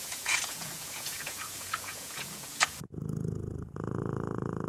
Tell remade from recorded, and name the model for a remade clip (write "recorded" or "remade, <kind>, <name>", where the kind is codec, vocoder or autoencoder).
remade, vocoder, Vocos